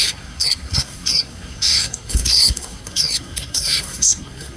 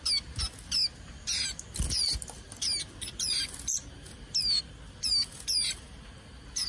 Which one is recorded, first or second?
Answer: second